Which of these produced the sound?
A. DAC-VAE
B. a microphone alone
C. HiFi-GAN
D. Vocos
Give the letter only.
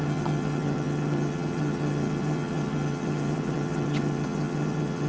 C